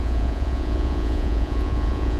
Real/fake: fake